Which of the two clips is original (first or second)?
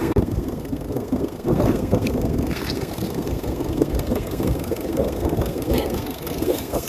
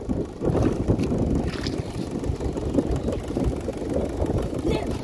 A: second